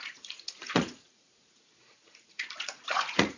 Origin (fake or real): fake